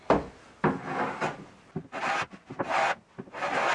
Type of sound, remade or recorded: recorded